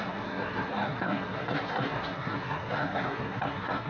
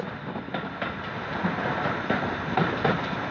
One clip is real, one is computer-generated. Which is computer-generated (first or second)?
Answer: first